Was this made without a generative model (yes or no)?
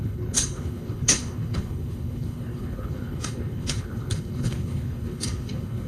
no